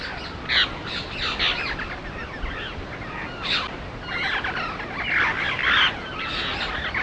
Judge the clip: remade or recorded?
recorded